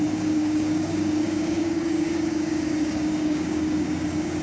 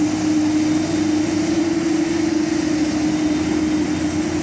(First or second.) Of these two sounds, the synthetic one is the first